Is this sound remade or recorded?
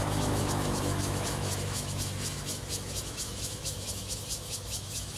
remade